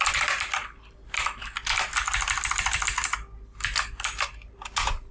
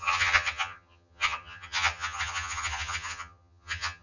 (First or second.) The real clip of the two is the first